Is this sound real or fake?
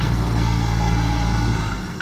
fake